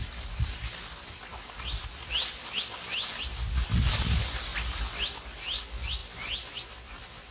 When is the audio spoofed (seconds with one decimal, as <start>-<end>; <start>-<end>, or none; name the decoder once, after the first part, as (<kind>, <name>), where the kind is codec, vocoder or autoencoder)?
none

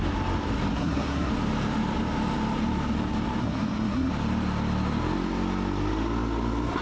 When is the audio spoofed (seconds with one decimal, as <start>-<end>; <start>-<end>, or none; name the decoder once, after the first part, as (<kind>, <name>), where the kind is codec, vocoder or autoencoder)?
0.7-1.3 (codec, SNAC); 3.4-4.1

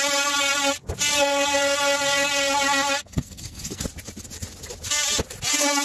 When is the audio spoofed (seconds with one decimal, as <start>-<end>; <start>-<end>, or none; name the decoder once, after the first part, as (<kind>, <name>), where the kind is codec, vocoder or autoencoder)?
3.0-3.8 (codec, SNAC)

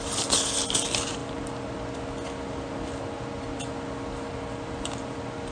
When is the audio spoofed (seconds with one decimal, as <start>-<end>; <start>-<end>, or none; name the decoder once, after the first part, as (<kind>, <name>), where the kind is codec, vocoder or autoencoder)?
none

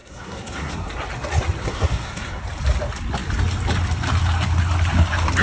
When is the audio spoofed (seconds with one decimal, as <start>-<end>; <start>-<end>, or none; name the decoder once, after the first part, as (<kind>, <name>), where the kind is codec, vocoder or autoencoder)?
0.0-0.9 (codec, SNAC); 1.6-2.4

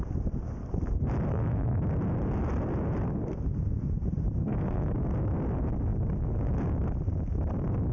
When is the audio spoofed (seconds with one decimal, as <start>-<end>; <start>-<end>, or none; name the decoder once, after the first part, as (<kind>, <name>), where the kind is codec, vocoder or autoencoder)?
1.3-1.8 (codec, SNAC); 4.4-4.9

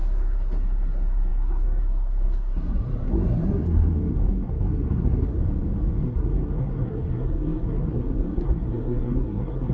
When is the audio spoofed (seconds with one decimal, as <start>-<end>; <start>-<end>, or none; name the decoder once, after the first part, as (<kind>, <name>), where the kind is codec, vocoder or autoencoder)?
0.0-5.4 (codec, SNAC); 6.0-9.7

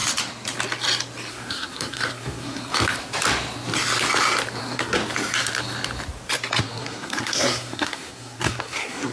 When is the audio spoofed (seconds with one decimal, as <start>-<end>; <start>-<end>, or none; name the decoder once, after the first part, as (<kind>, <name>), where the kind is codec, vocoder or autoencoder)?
1.3-2.7 (codec, SNAC); 4.6-5.0; 6.6-9.1